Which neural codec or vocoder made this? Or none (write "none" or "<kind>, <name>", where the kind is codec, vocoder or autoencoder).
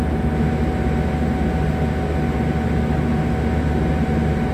none